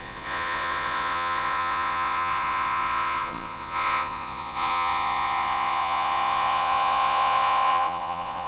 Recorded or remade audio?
remade